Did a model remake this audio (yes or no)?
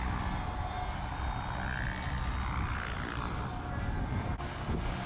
no